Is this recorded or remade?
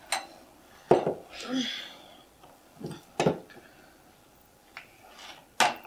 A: recorded